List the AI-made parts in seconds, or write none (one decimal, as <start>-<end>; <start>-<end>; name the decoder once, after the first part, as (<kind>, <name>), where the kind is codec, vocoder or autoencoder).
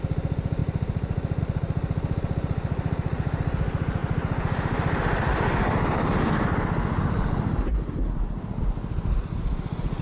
none